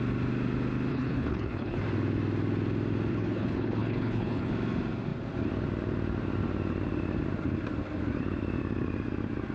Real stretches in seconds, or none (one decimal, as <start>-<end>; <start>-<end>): 0.0-0.9; 1.8-3.1; 4.5-9.5